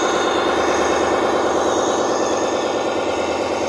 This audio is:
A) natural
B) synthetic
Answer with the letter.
A